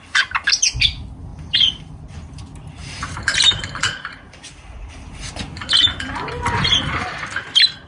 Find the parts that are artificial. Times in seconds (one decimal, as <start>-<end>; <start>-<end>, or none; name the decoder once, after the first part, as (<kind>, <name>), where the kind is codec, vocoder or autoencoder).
1.3-2.4 (vocoder, BigVGAN v2); 2.8-5.3